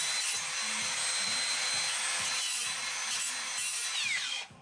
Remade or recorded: recorded